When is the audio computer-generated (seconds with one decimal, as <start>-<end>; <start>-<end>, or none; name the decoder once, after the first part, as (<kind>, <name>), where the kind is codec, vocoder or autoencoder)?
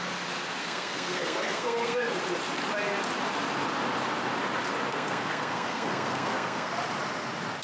0.6-2.2 (codec, SNAC); 4.9-6.7